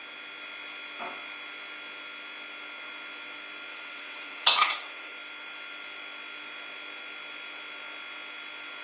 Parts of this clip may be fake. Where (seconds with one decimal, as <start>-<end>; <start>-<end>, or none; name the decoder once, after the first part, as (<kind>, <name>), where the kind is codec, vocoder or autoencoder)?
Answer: 3.7-5.1 (vocoder, WaveNeXt)